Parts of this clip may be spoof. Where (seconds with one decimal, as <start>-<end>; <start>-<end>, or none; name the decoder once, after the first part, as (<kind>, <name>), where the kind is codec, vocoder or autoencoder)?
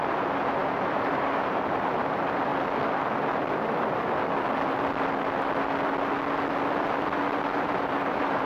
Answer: 0.0-2.5 (vocoder, BigVGAN v2); 7.6-8.5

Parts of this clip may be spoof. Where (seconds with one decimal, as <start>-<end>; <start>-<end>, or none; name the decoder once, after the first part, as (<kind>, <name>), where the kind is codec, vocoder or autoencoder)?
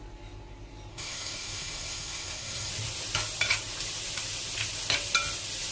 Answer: 0.9-2.7 (codec, SNAC)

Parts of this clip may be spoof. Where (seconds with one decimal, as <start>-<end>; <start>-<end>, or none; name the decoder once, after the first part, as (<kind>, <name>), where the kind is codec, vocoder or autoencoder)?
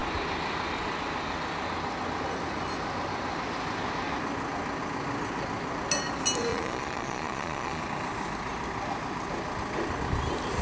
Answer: 6.5-7.8 (vocoder, Vocos)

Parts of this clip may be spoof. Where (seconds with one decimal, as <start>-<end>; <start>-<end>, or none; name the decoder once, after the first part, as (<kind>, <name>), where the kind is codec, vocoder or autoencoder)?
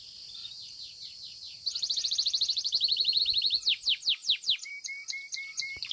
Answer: 0.4-3.2 (vocoder, BigVGAN v2); 4.2-4.7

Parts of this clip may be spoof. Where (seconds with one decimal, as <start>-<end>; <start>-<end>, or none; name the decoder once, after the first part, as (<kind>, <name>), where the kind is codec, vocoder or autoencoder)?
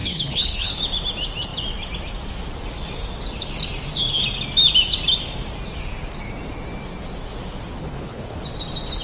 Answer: 0.0-0.8 (codec, HILCodec); 7.8-8.4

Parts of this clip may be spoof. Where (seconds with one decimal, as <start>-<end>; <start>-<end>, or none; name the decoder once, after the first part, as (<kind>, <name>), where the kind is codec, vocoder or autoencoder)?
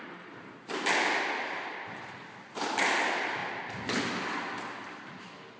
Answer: 0.0-3.4 (vocoder, BigVGAN v2); 4.8-5.6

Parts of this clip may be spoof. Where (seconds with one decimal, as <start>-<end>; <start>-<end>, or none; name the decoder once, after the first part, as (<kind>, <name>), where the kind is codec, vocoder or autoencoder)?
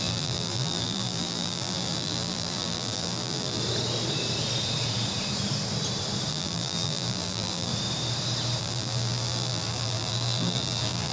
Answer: 0.0-3.6 (vocoder, BigVGAN v2); 6.3-7.7; 8.6-11.1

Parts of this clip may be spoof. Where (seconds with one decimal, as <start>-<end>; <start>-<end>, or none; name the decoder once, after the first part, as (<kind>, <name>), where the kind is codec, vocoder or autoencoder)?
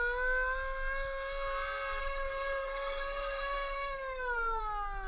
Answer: 2.0-4.6 (codec, SNAC)